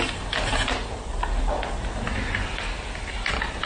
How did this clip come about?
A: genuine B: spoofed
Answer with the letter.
A